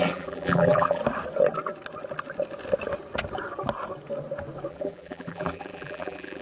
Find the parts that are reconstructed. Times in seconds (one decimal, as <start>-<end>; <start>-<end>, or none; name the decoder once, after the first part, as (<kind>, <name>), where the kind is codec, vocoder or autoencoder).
0.0-1.0 (vocoder, BigVGAN v2); 4.7-6.4